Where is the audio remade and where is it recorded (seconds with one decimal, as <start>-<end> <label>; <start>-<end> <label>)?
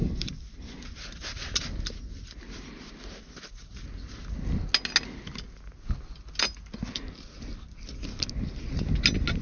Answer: 0.0-0.9 remade; 0.9-9.4 recorded